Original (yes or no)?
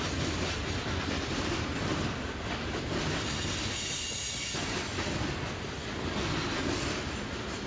yes